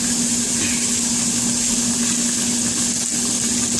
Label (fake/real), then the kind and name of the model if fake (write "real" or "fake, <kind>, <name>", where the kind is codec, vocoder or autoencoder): real